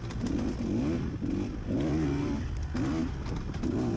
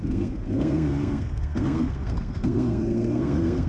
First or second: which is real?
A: first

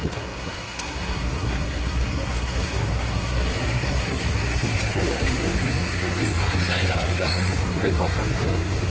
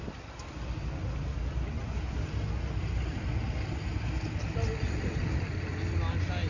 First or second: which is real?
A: second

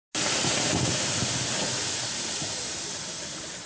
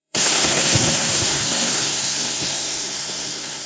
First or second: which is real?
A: first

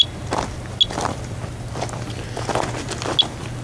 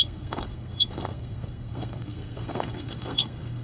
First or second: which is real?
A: first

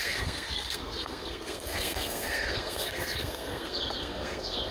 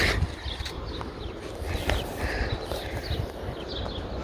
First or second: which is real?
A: second